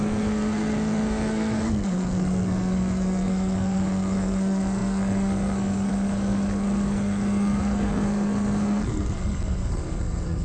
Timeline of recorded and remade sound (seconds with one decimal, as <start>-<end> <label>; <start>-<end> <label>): 0.0-10.4 remade